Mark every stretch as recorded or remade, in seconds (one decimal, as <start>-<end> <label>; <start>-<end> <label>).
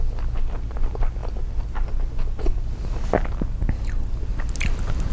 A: 0.0-5.1 recorded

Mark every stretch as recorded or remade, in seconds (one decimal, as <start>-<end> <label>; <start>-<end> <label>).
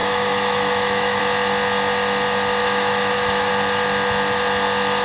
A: 0.0-1.2 remade; 1.2-2.6 recorded; 2.6-3.5 remade; 3.5-5.0 recorded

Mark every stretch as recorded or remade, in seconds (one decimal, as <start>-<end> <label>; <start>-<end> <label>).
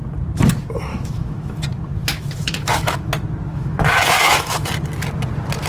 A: 0.0-0.9 recorded; 0.9-1.6 remade; 1.6-2.0 recorded; 2.0-3.1 remade; 3.1-3.5 recorded; 3.5-4.7 remade; 4.7-5.7 recorded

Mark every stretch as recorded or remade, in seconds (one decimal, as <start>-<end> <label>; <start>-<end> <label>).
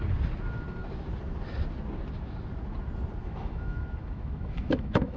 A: 0.0-3.2 recorded; 3.2-5.2 remade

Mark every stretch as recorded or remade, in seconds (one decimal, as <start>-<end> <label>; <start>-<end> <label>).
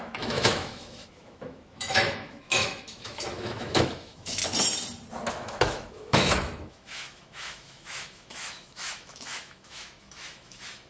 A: 0.0-4.4 remade; 4.4-5.3 recorded; 5.3-10.9 remade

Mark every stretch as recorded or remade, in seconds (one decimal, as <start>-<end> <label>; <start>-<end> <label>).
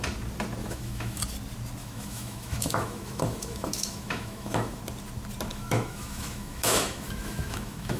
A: 0.0-0.6 recorded; 0.6-1.2 remade; 1.2-1.8 recorded; 1.8-4.8 remade; 4.8-5.5 recorded; 5.5-8.0 remade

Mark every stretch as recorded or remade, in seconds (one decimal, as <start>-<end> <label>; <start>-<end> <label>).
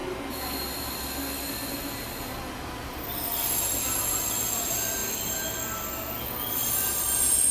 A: 0.0-7.5 recorded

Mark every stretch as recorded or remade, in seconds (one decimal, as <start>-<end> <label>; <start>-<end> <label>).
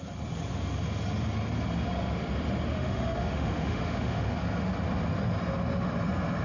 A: 0.0-2.7 recorded; 2.7-4.4 remade; 4.4-6.4 recorded